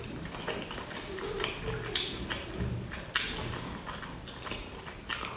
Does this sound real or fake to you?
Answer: real